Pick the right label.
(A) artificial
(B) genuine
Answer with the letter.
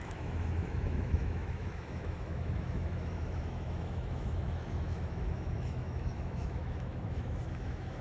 A